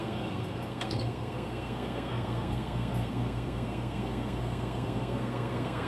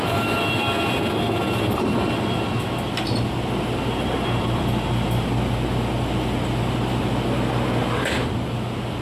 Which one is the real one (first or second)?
second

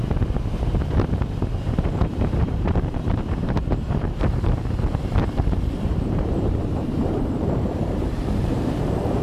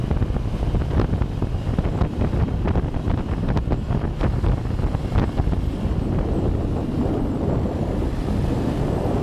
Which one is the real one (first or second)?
second